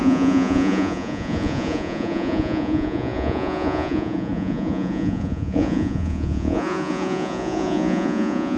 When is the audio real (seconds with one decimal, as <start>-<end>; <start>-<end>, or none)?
none